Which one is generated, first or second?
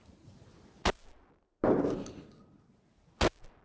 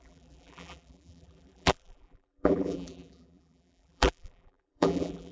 second